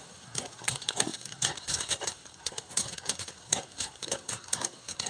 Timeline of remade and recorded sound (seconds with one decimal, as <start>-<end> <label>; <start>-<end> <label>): 0.0-5.1 remade